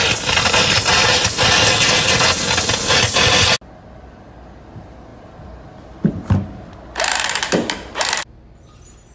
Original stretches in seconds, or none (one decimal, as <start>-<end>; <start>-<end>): 0.0-9.1